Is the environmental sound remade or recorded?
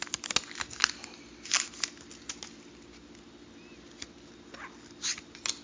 recorded